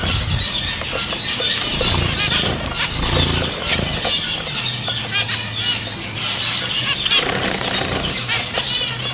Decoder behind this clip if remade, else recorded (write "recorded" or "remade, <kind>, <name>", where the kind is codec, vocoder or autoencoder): recorded